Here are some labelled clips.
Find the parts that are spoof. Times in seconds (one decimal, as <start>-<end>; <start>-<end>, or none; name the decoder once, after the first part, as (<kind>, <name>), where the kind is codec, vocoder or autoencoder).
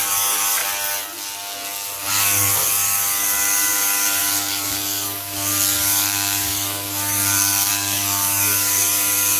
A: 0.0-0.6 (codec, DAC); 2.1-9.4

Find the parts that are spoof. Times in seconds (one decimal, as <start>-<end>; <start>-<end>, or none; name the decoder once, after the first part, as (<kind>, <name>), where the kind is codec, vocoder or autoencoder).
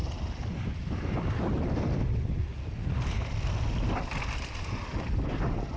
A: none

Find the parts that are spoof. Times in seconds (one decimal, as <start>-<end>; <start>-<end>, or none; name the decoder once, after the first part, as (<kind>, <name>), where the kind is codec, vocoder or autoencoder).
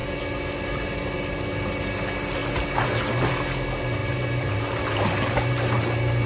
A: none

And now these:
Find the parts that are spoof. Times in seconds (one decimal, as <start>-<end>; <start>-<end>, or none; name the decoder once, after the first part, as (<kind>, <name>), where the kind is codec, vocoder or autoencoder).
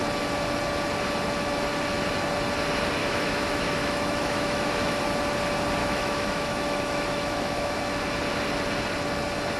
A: 3.0-5.0 (autoencoder, DAC-VAE); 5.8-7.8